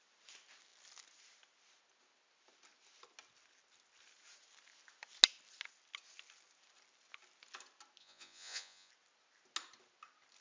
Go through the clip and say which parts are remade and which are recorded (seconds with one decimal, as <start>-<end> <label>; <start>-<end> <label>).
0.0-8.0 recorded; 8.0-8.9 remade; 8.9-10.4 recorded

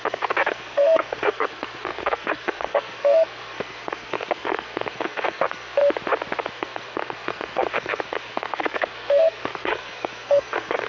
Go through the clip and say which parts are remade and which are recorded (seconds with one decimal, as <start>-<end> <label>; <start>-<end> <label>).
0.0-5.8 remade; 5.8-6.5 recorded; 6.5-10.9 remade

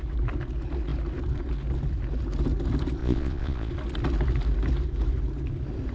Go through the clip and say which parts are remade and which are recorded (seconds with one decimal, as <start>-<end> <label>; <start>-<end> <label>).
0.0-3.0 recorded; 3.0-3.7 remade; 3.7-5.9 recorded

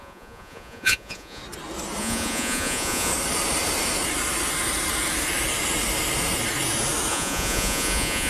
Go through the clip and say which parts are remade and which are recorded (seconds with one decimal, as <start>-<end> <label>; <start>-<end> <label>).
0.0-1.4 remade; 1.4-2.0 recorded; 2.0-3.1 remade; 3.1-7.1 recorded; 7.1-8.3 remade

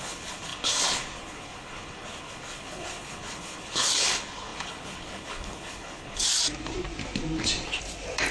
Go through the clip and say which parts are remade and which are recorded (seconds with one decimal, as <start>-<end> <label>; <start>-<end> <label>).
0.0-6.2 remade; 6.2-8.3 recorded

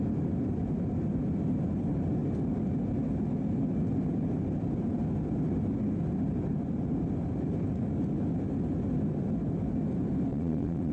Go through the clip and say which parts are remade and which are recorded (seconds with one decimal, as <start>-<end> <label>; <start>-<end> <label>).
0.0-10.3 recorded; 10.3-10.9 remade

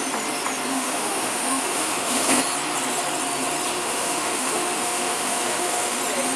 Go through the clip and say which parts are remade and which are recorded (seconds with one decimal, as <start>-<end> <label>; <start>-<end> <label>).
0.0-0.7 recorded; 0.7-2.4 remade; 2.4-3.7 recorded; 3.7-6.0 remade; 6.0-6.4 recorded